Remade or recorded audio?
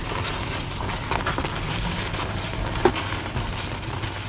recorded